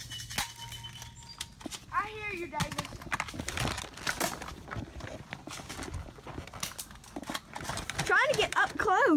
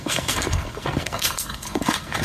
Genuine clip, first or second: first